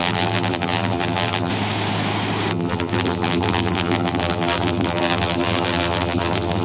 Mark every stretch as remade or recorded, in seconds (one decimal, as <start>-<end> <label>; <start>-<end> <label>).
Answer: 0.0-1.5 remade; 1.5-2.5 recorded; 2.5-6.6 remade